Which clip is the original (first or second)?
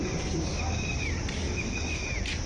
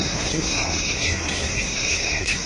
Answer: first